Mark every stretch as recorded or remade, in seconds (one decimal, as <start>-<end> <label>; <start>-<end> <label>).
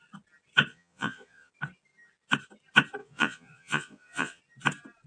0.0-0.7 recorded; 0.7-1.5 remade; 1.5-3.0 recorded; 3.0-4.4 remade; 4.4-5.1 recorded